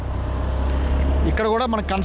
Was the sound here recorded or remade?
recorded